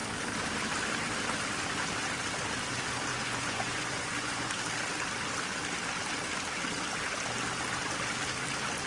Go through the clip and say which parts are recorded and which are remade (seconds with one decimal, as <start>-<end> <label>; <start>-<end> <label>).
0.0-3.1 recorded; 3.1-4.5 remade; 4.5-8.9 recorded